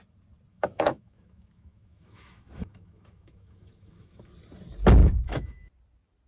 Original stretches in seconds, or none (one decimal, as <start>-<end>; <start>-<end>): 0.0-0.5; 4.3-5.0; 5.7-6.3